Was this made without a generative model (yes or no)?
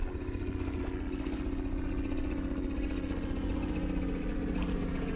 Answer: yes